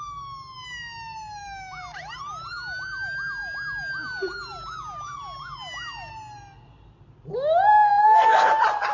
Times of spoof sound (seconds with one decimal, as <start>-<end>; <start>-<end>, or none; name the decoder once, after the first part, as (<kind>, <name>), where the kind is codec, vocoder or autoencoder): 8.0-8.5 (codec, SNAC)